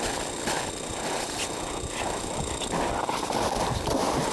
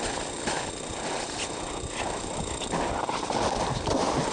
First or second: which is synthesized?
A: second